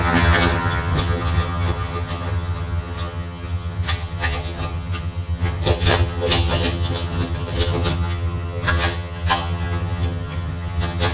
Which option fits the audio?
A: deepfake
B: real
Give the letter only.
A